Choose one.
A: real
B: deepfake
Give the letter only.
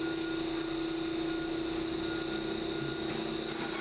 A